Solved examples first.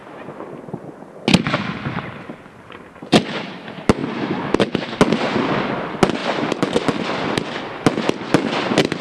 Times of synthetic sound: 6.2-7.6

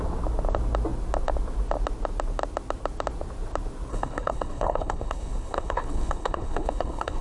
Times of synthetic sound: 3.9-7.2

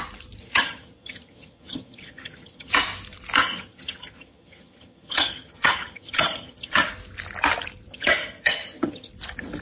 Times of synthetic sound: 0.4-2.7; 3.4-6.9; 7.9-9.1

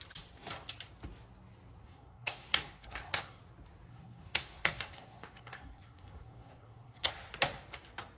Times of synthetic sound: 1.8-3.4; 3.9-7.1

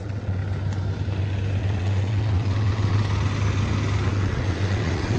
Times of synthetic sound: 0.0-0.4; 1.6-3.0; 4.1-5.2

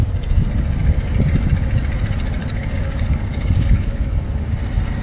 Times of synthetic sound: 2.4-4.3

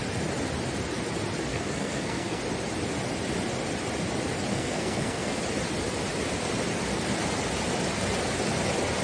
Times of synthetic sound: 1.5-2.4; 4.5-5.4

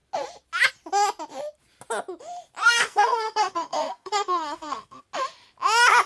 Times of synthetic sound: 2.6-5.0